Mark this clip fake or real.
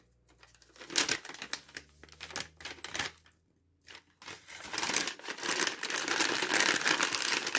real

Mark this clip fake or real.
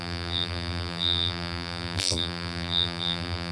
fake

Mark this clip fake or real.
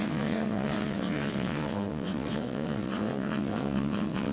fake